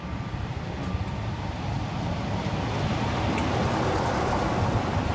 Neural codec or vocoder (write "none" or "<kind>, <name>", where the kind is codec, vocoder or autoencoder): none